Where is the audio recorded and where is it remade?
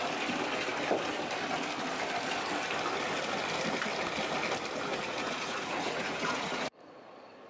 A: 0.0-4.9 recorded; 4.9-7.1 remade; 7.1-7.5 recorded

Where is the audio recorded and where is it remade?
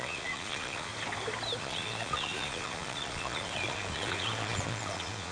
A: 0.0-0.9 remade; 0.9-1.6 recorded; 1.6-5.3 remade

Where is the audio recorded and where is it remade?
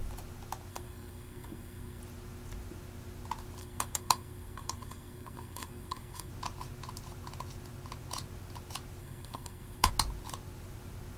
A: 0.0-0.7 recorded; 0.7-2.0 remade; 2.0-3.6 recorded; 3.6-6.3 remade; 6.3-9.0 recorded; 9.0-9.9 remade; 9.9-11.2 recorded